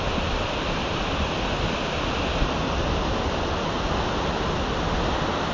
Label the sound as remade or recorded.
recorded